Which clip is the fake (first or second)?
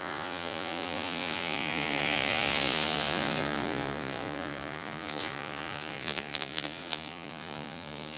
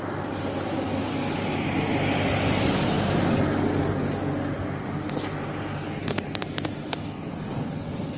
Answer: first